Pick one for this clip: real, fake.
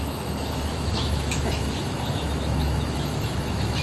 fake